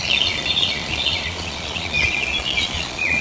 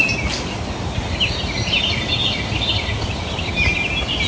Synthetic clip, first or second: first